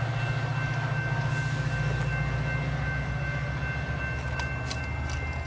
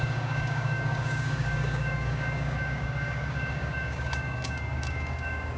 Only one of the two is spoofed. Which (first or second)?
second